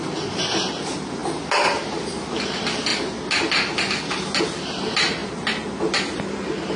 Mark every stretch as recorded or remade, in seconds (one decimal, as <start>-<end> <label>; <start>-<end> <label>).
0.0-6.8 recorded